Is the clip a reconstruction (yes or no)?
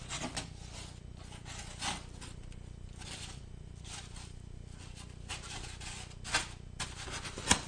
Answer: no